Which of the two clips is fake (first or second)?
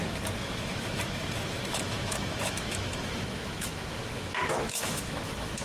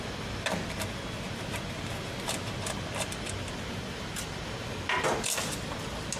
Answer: first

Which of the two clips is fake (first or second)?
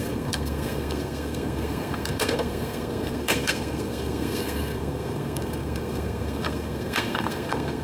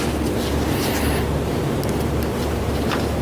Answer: first